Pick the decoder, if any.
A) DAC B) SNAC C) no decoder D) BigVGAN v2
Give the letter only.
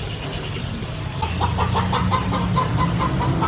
C